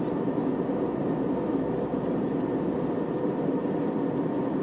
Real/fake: real